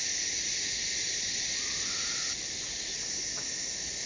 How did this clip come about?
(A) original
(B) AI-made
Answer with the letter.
A